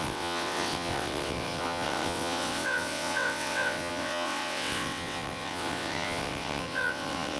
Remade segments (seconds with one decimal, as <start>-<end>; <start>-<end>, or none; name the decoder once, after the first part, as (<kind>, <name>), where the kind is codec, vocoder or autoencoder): 0.0-7.4 (vocoder, WaveNeXt)